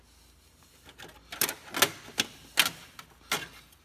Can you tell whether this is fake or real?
real